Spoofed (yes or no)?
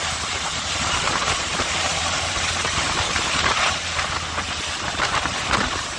yes